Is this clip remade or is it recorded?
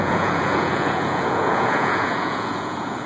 remade